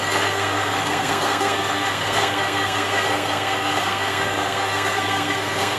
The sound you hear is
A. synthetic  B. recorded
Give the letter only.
A